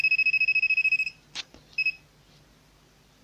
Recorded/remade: recorded